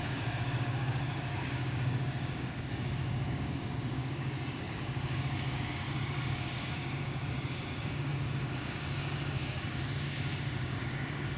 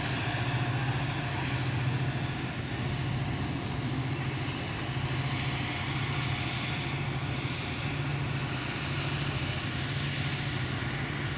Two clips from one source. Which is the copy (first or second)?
first